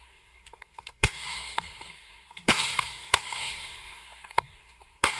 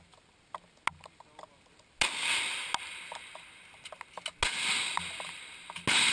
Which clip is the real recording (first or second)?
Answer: second